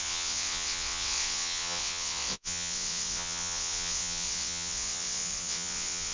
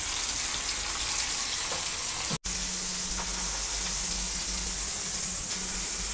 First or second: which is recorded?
second